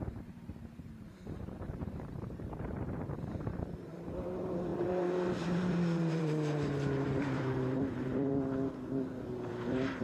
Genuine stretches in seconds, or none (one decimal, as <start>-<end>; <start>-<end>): 8.3-9.5